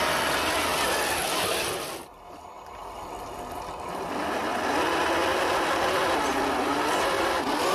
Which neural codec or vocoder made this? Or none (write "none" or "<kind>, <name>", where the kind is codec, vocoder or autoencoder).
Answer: none